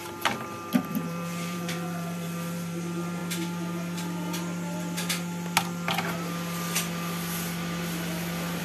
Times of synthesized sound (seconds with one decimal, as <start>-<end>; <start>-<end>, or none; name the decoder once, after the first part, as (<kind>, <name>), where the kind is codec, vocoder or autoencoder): 0.0-3.2 (vocoder, BigVGAN v2)